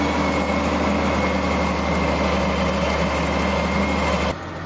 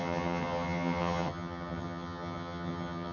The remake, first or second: second